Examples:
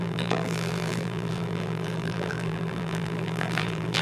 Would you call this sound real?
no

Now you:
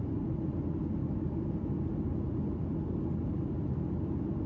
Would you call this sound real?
yes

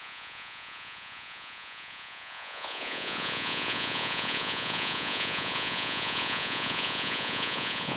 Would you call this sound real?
no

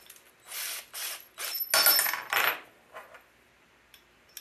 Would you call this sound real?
yes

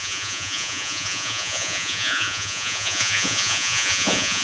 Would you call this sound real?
no